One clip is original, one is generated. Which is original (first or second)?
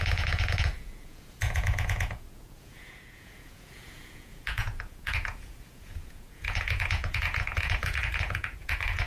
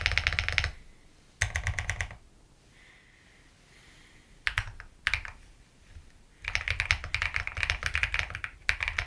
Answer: second